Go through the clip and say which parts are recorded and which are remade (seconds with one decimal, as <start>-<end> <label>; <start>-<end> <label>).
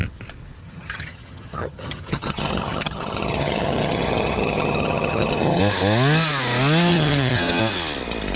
0.0-0.6 recorded; 0.6-5.6 remade; 5.6-6.9 recorded; 6.9-7.6 remade; 7.6-8.4 recorded